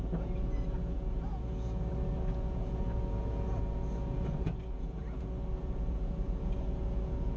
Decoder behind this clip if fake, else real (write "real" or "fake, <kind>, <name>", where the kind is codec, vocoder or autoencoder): fake, vocoder, Vocos